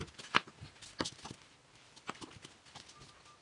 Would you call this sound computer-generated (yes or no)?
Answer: no